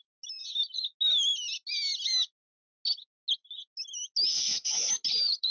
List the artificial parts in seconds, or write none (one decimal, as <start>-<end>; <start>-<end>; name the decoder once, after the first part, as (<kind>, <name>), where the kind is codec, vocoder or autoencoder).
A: 4.3-4.9 (codec, ZipCodec)